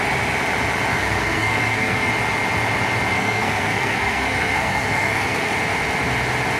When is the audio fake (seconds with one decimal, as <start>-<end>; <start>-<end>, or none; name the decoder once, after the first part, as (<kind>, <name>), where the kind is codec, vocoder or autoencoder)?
0.9-2.1 (codec, SNAC); 3.1-5.5